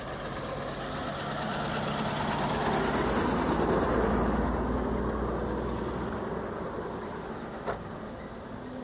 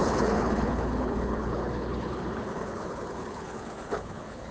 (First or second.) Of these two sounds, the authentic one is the first